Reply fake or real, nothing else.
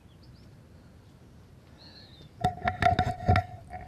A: real